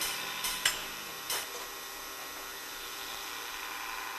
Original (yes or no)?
yes